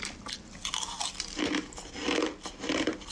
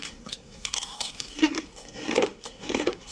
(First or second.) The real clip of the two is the first